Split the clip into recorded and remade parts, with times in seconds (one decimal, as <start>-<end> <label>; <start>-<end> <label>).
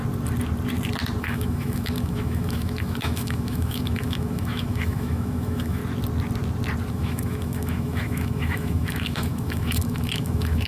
0.0-1.2 recorded; 1.2-5.8 remade; 5.8-6.9 recorded; 6.9-10.7 remade